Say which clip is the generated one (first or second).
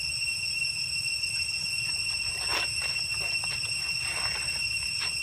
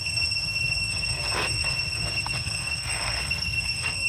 second